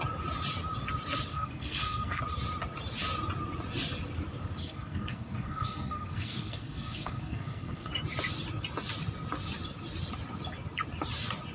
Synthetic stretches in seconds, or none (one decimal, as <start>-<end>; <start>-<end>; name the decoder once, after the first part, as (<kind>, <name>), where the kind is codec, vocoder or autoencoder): 1.3-2.2 (codec, SNAC); 4.6-7.9